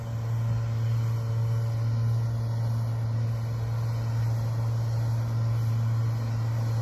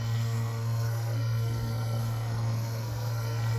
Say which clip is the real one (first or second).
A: first